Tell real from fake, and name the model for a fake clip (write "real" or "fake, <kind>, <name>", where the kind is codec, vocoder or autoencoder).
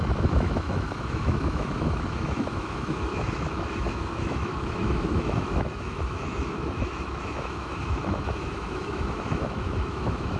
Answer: fake, autoencoder, DAC-VAE